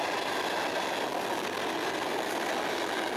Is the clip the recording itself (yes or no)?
yes